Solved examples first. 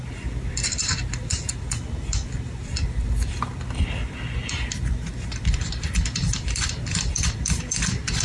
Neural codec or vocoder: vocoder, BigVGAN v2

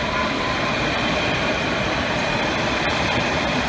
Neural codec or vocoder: vocoder, BigVGAN v2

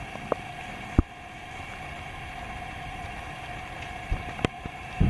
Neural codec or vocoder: none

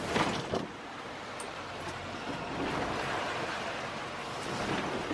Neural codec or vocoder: vocoder, BigVGAN v2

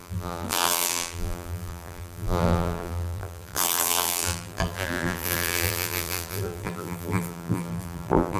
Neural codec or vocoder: vocoder, BigVGAN v2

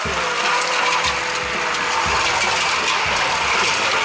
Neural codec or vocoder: none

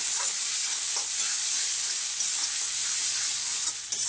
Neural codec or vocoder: none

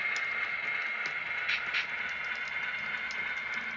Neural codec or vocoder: none